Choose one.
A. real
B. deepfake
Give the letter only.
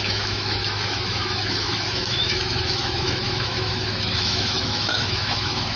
B